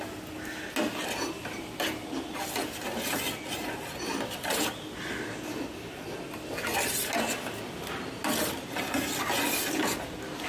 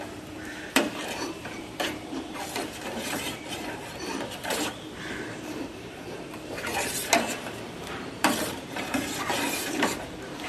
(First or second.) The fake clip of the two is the second